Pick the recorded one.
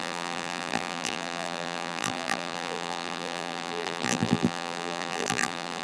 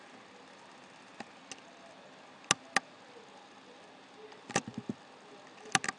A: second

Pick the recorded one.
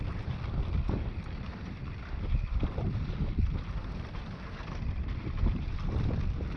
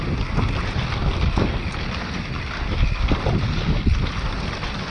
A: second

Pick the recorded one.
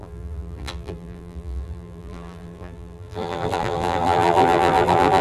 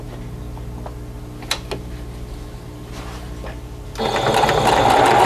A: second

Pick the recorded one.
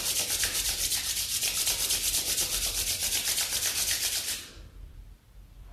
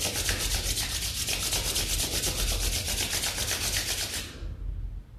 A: second